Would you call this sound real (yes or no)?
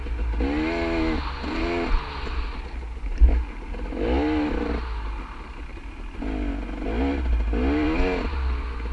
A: yes